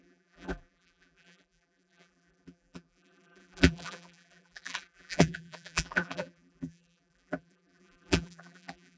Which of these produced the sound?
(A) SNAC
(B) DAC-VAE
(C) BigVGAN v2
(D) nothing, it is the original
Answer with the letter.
C